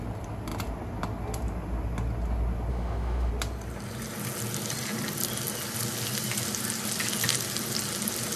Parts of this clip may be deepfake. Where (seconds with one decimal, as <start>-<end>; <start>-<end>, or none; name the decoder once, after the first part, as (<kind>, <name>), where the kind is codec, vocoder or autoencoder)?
2.7-3.3 (autoencoder, DAC-VAE)